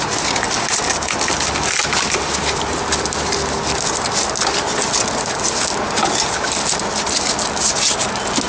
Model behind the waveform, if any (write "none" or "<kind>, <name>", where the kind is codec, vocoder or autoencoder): none